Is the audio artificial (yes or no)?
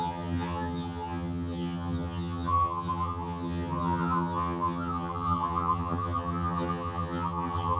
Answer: yes